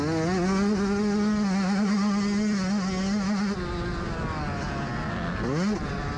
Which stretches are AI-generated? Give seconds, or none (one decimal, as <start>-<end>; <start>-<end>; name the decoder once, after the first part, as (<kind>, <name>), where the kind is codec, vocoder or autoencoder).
none